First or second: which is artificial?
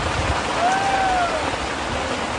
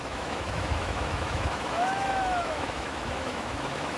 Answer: second